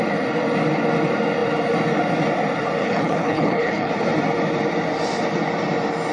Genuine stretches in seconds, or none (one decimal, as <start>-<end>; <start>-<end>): 0.0-2.8; 3.9-6.1